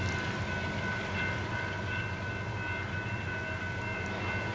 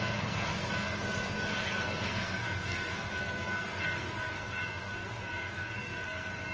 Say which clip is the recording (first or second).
first